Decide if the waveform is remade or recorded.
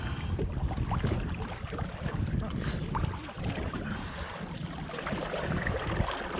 recorded